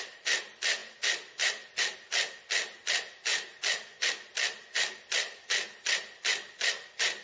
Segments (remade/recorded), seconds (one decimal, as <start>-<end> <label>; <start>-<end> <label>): 0.0-7.2 recorded